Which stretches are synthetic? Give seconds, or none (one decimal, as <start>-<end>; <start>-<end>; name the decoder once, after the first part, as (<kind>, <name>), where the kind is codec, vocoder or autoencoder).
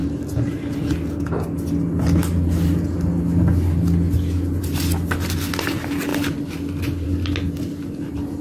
6.1-8.0 (vocoder, BigVGAN v2)